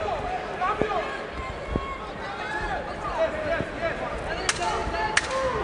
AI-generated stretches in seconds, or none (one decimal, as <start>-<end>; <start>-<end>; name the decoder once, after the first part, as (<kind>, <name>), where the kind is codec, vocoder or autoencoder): none